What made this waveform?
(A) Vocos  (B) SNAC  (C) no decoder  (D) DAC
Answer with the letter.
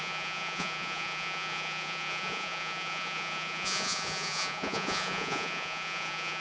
A